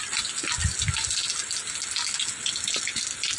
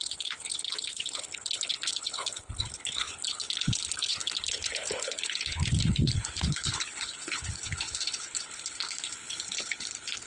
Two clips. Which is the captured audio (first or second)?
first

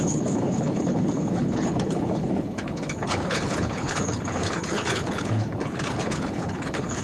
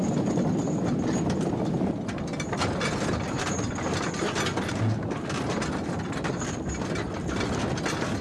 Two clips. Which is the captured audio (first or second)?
second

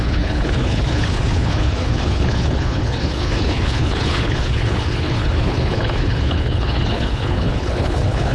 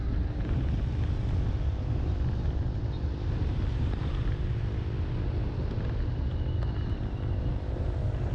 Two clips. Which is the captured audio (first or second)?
second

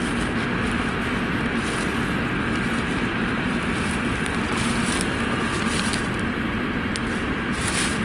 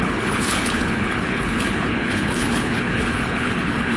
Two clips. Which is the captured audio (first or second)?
first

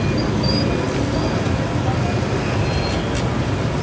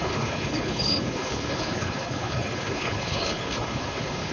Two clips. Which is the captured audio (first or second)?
first